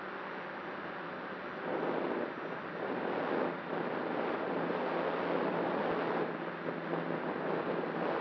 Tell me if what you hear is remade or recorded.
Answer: recorded